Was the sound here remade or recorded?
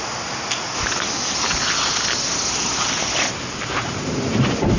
recorded